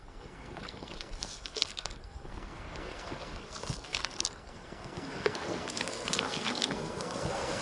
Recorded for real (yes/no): no